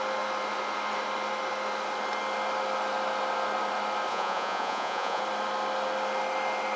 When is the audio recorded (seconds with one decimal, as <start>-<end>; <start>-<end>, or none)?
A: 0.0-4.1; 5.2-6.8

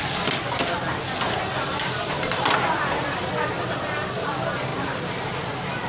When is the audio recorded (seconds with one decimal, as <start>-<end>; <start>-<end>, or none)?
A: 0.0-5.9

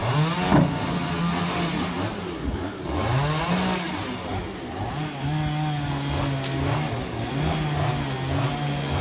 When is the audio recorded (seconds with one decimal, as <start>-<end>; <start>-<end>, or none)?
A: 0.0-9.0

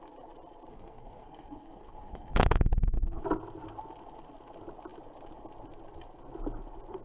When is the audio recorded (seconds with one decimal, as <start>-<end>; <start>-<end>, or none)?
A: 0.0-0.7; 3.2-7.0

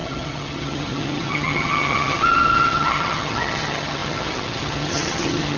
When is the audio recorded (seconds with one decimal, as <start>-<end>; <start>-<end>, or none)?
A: none

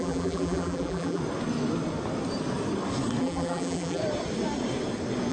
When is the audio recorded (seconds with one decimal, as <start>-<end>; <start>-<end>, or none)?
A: 1.2-3.2; 4.0-5.3

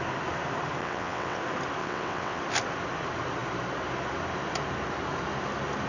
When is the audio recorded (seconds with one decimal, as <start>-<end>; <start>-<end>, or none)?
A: 0.0-0.8; 1.4-1.8; 2.4-5.9